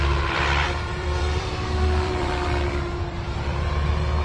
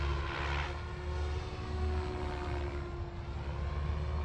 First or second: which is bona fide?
second